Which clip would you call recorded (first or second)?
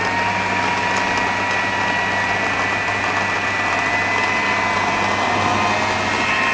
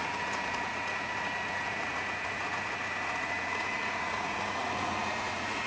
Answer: first